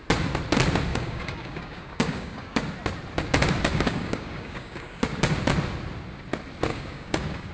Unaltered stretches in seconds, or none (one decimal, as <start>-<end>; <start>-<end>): 0.0-0.9; 2.6-3.7; 5.0-6.7